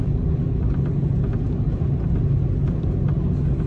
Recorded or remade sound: recorded